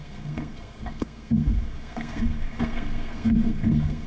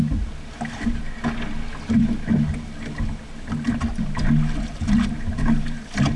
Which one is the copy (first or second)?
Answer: first